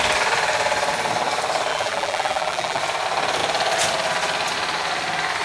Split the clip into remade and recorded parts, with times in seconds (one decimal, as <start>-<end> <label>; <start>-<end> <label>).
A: 0.0-1.7 recorded; 1.7-2.8 remade; 2.8-5.4 recorded